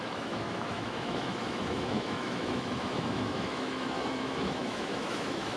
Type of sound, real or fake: fake